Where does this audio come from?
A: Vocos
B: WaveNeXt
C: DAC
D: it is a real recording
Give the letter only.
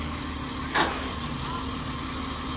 D